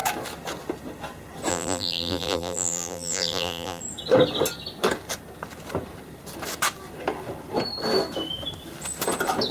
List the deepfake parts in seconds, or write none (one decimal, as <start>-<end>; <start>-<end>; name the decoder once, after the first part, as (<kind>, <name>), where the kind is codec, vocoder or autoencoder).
1.5-3.8 (vocoder, BigVGAN v2)